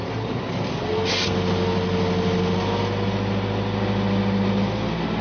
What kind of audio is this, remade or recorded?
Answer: recorded